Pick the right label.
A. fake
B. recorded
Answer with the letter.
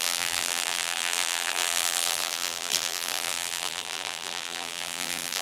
A